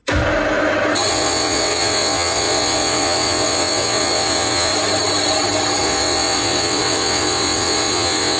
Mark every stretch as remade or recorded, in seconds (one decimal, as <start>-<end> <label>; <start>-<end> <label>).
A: 0.0-1.1 recorded; 1.1-4.7 remade; 4.7-5.8 recorded; 5.8-8.4 remade